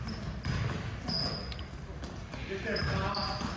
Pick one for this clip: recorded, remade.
recorded